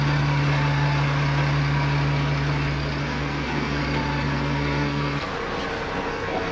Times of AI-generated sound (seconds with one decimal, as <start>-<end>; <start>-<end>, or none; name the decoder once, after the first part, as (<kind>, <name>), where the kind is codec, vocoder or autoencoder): 3.0-3.8 (codec, SNAC); 4.3-5.3; 6.1-6.5